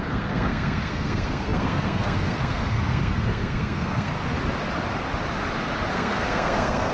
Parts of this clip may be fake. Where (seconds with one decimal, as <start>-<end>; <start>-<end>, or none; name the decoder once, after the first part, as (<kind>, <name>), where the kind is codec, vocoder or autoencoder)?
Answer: 0.0-4.1 (codec, SNAC); 5.9-6.9